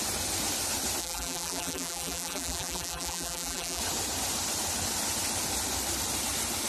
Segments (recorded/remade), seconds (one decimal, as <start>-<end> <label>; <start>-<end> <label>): 0.0-1.0 recorded; 1.0-3.8 remade; 3.8-6.7 recorded